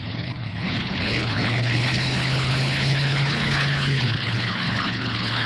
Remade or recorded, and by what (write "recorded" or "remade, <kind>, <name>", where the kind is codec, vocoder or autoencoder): remade, codec, HILCodec